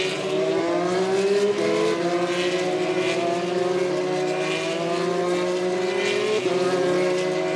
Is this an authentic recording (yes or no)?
yes